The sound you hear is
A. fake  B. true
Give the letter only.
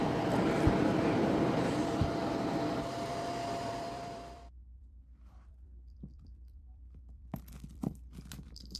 A